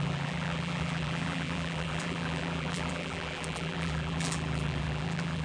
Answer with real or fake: fake